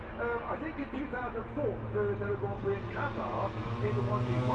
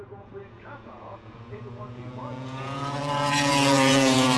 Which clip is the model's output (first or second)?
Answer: second